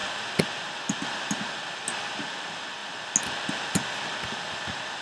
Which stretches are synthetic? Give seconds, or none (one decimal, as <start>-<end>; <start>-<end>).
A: none